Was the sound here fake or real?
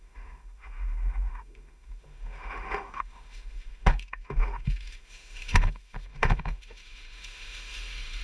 fake